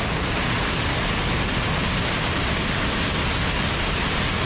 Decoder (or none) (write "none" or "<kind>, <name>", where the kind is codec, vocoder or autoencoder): none